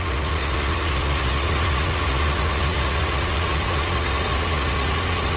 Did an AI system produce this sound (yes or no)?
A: yes